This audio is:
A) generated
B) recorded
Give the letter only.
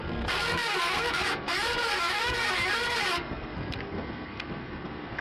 A